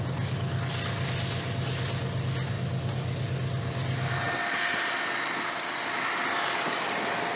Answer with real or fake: real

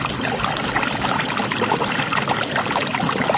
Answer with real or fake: real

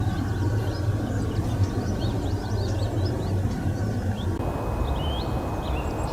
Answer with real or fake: real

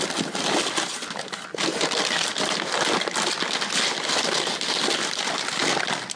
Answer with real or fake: real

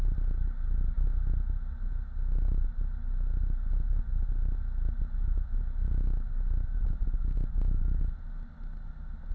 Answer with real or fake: real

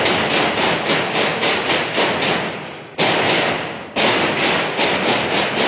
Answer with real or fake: real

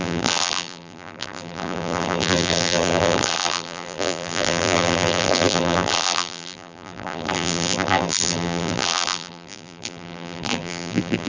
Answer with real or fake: fake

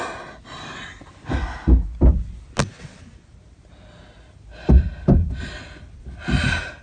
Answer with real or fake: real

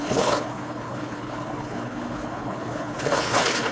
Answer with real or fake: fake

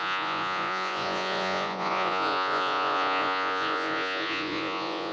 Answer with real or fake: fake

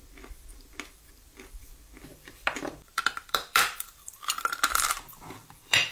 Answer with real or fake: fake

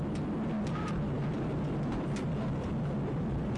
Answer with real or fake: real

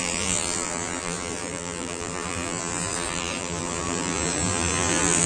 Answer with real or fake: fake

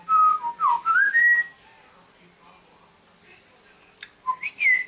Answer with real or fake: real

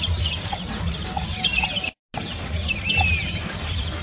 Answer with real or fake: real